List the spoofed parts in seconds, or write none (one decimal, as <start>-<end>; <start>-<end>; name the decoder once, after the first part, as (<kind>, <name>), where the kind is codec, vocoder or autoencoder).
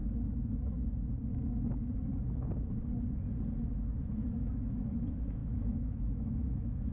4.1-6.9 (autoencoder, DAC-VAE)